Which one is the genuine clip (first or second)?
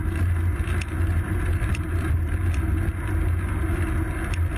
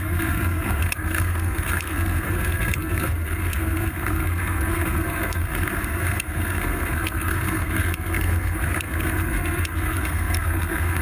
first